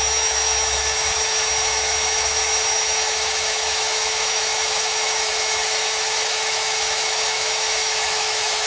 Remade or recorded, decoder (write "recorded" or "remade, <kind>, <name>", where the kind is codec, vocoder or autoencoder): remade, autoencoder, DAC-VAE